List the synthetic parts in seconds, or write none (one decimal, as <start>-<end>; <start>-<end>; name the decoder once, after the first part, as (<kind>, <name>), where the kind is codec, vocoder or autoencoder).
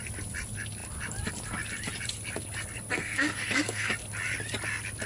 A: 2.9-3.9 (codec, SNAC)